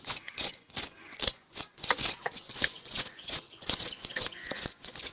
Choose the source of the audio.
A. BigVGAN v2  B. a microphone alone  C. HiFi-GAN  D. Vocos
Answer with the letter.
D